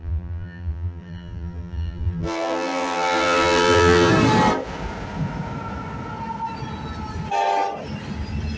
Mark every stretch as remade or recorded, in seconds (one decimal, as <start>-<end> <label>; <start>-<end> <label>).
0.0-4.1 remade; 4.1-8.6 recorded